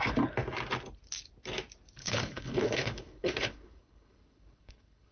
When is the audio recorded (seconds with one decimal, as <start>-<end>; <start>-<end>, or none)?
0.0-2.0